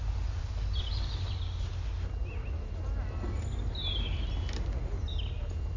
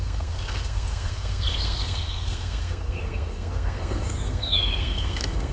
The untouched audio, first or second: first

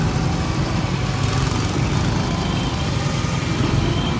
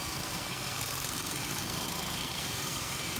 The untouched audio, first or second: first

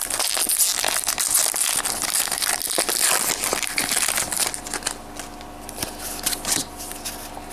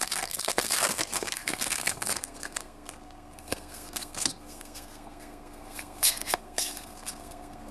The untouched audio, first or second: first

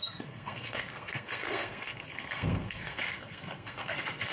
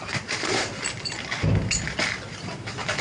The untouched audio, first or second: second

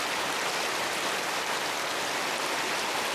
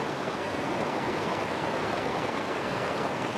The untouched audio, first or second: first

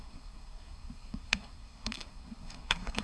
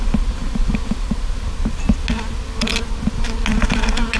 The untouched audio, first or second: second